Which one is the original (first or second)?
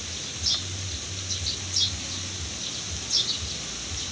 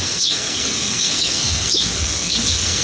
first